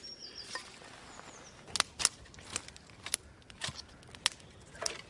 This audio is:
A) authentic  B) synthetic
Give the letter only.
A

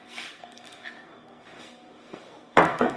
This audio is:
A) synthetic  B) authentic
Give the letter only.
A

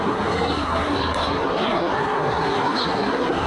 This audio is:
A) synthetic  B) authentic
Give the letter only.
A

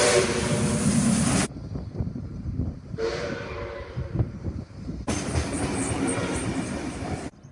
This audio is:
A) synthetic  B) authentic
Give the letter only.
A